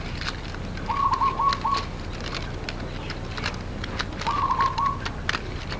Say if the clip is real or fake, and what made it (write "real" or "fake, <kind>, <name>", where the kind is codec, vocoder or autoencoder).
real